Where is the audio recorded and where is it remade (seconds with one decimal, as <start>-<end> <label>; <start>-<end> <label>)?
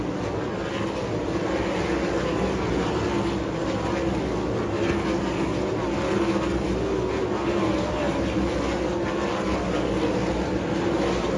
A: 0.0-11.4 recorded